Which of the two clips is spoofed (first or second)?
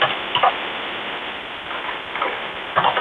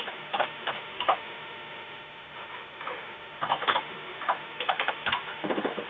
second